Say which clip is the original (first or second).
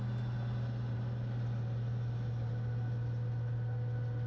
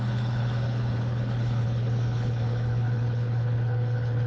first